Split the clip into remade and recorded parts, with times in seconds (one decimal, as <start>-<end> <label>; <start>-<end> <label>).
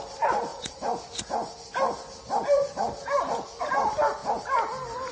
0.0-5.1 recorded